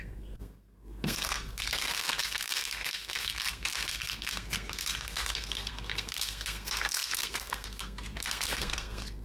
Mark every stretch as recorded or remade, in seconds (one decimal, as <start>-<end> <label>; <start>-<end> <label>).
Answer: 0.0-9.2 remade

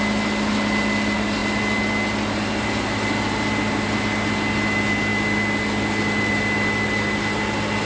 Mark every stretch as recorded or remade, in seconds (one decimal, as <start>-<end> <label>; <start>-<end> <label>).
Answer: 0.0-7.9 recorded

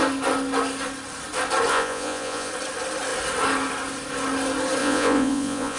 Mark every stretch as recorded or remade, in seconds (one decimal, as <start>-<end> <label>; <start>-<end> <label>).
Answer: 0.0-1.7 recorded; 1.7-2.5 remade; 2.5-4.8 recorded; 4.8-5.8 remade

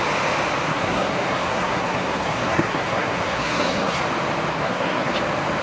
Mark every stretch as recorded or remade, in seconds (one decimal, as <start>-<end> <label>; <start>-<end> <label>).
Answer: 0.0-0.7 recorded; 0.7-4.0 remade; 4.0-4.5 recorded; 4.5-5.1 remade; 5.1-5.6 recorded

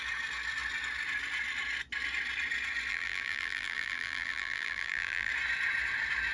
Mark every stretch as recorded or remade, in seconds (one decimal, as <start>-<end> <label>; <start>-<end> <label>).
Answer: 0.0-2.9 recorded; 2.9-5.3 remade; 5.3-6.3 recorded

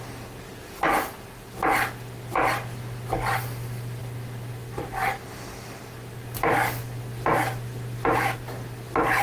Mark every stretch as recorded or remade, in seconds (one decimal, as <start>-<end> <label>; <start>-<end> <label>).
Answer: 0.0-9.2 recorded

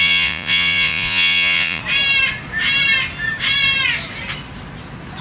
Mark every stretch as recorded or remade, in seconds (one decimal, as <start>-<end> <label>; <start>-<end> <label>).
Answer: 0.0-1.8 remade; 1.8-5.2 recorded

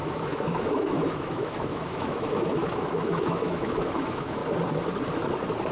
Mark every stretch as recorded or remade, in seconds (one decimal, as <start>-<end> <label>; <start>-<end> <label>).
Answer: 0.0-4.4 remade; 4.4-5.7 recorded